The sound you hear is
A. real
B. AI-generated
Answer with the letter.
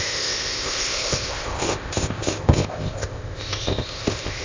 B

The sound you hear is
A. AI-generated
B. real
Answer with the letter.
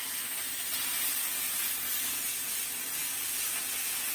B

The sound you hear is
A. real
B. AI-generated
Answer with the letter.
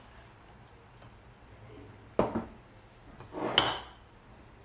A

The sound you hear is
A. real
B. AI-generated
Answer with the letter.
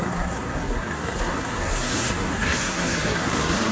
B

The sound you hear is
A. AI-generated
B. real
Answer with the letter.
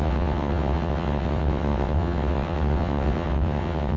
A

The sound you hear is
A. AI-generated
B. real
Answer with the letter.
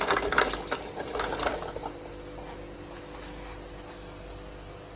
B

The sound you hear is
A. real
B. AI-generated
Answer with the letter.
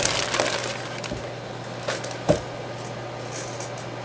A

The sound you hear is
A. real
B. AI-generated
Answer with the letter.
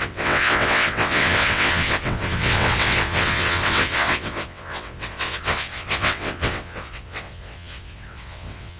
B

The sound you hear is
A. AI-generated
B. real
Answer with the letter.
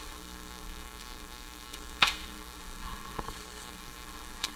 A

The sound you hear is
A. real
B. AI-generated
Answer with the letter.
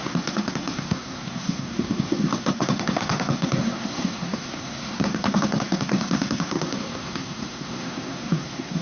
B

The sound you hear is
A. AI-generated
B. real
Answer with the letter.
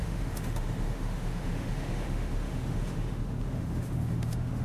A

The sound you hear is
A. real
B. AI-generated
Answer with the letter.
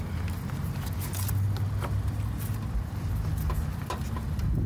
A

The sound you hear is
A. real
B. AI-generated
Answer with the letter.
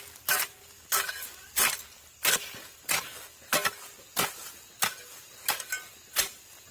A